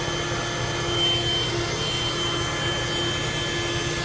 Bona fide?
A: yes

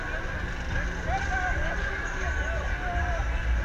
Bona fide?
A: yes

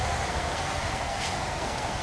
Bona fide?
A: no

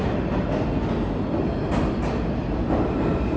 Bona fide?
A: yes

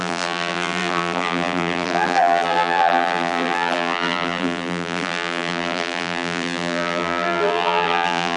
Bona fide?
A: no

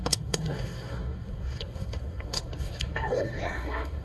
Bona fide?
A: no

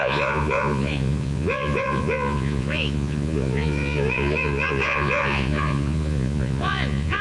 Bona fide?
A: no